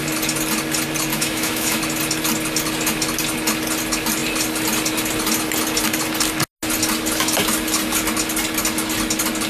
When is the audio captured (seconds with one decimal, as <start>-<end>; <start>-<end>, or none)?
0.0-1.1; 1.8-9.5